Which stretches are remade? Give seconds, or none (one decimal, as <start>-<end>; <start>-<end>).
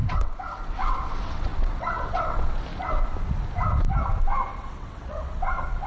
0.0-2.6; 4.5-5.9